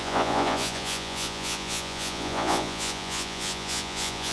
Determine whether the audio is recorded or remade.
remade